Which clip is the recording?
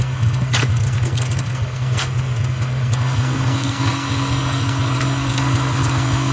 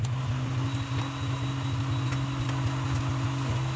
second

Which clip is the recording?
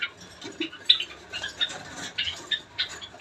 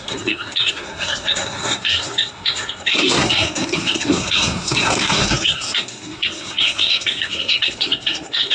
first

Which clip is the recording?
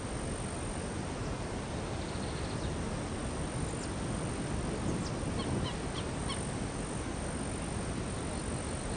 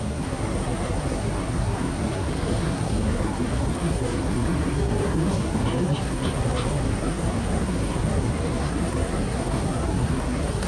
first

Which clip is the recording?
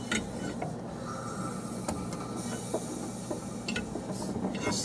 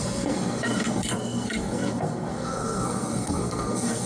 first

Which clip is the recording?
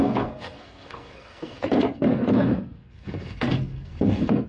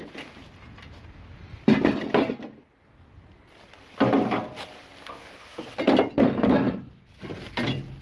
second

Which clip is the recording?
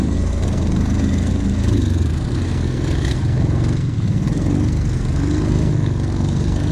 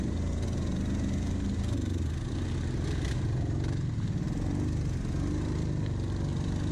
second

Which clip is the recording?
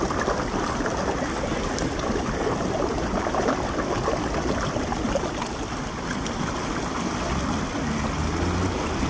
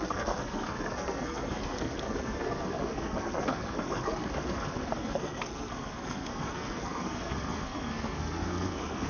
first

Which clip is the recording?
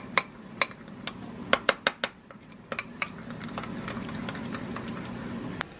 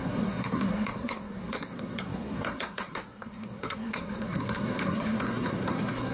first